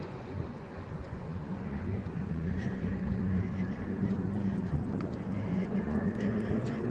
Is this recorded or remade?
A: remade